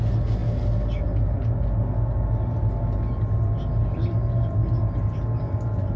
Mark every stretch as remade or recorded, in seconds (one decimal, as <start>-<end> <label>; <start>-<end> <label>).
0.0-6.0 recorded